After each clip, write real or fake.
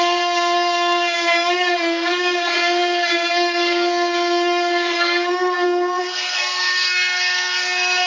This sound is fake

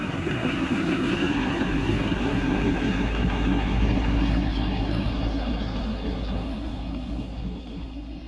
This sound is fake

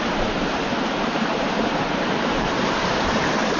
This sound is fake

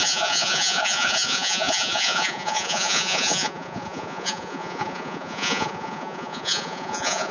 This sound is fake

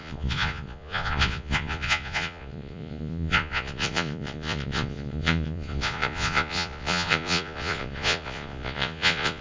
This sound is fake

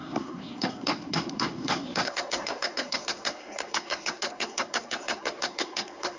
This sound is fake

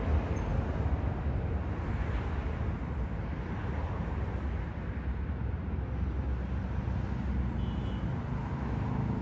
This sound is real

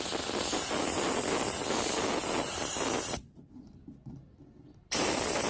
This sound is real